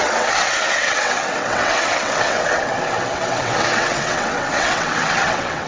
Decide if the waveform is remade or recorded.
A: remade